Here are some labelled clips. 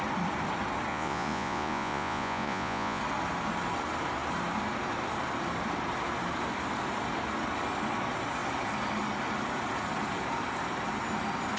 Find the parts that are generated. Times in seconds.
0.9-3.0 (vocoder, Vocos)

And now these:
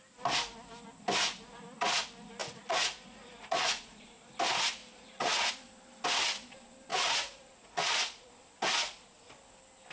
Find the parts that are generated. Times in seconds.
2.4-4.3 (vocoder, Vocos); 4.8-5.5; 6.9-8.3

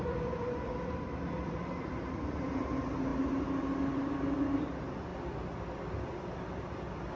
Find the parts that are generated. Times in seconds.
none

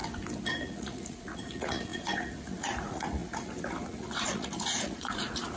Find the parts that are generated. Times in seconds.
0.6-5.6 (vocoder, Vocos)